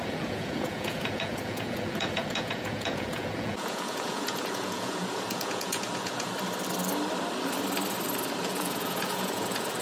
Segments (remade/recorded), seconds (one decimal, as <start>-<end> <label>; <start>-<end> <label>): 0.0-6.3 remade; 6.3-8.4 recorded; 8.4-9.8 remade